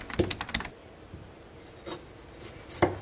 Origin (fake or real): real